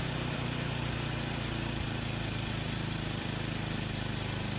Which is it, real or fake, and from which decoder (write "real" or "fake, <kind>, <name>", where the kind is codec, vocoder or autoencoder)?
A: fake, vocoder, BigVGAN v2